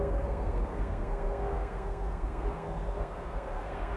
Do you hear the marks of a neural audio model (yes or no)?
yes